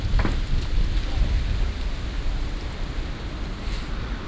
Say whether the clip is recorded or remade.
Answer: recorded